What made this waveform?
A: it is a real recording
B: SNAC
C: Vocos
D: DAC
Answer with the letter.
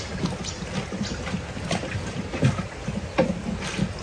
A